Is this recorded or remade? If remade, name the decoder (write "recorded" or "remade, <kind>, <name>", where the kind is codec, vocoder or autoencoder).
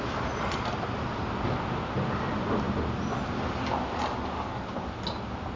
recorded